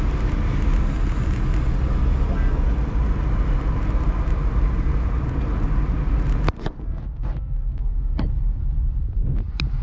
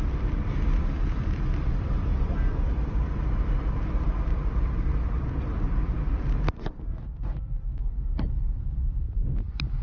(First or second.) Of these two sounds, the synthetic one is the second